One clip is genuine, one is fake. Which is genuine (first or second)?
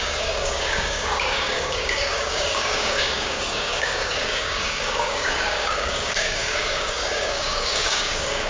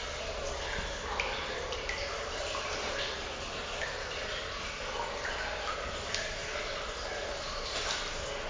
second